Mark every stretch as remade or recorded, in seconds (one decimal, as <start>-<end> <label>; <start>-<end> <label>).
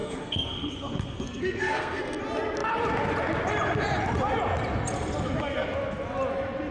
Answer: 0.0-2.2 remade; 2.2-6.7 recorded